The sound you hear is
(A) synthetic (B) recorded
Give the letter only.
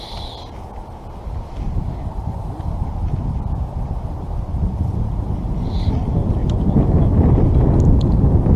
B